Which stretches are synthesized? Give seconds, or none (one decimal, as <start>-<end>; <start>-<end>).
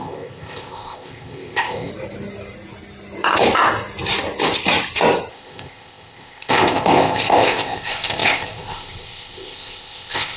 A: 0.0-1.9; 5.3-10.4